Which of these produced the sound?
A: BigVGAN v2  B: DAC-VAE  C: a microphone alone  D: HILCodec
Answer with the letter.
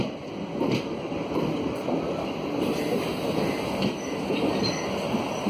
C